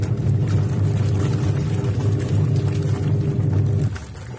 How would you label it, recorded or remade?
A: recorded